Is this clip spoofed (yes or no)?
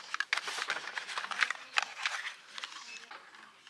no